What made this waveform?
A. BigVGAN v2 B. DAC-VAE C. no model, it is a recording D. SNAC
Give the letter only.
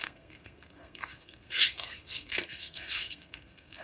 D